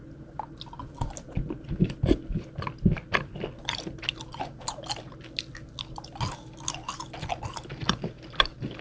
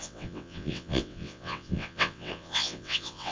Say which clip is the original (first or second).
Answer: first